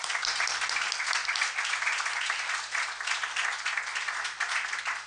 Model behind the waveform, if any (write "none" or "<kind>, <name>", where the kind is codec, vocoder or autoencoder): none